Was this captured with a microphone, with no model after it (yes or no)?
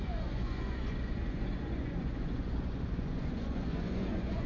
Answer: no